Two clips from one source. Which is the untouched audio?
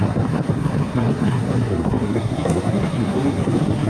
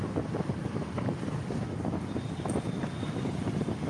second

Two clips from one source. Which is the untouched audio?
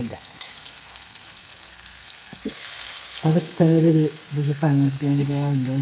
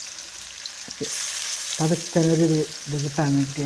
second